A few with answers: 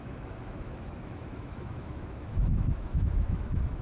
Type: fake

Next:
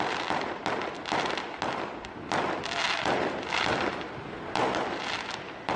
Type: real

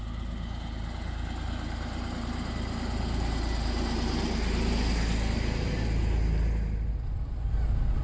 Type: real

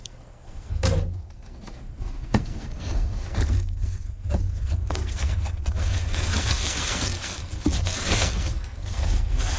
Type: fake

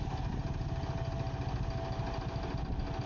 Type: real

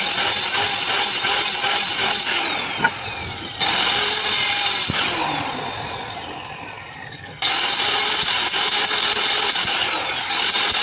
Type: real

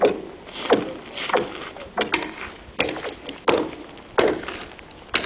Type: real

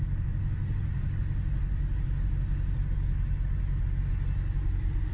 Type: real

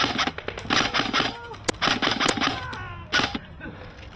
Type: real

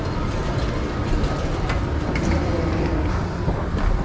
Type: real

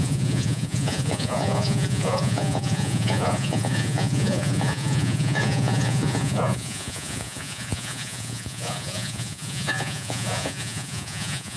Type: fake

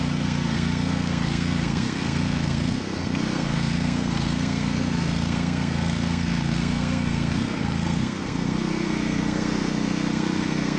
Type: fake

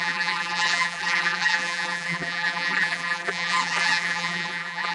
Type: fake